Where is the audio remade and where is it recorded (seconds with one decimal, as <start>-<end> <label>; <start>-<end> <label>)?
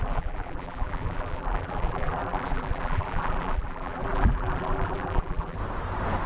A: 0.0-5.6 remade; 5.6-6.3 recorded